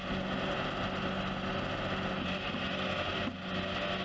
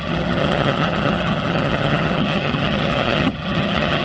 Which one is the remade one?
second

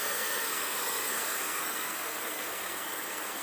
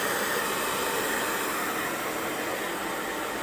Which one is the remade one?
first